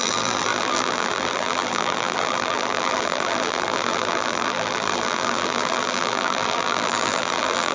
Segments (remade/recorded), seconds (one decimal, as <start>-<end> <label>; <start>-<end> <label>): 0.0-7.7 remade